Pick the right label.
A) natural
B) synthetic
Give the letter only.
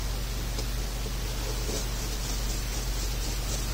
A